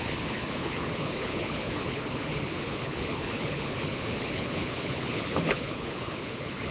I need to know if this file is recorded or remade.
remade